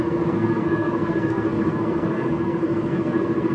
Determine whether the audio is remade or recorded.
remade